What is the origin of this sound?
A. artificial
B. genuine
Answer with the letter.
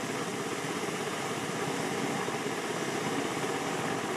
B